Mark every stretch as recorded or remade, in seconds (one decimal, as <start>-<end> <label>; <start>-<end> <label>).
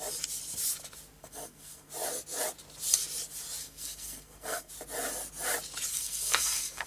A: 0.0-1.2 recorded; 1.2-1.9 remade; 1.9-3.6 recorded; 3.6-4.7 remade; 4.7-5.9 recorded; 5.9-6.9 remade